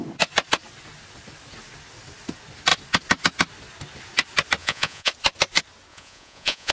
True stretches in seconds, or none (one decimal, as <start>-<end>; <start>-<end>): 0.0-4.6; 5.1-5.9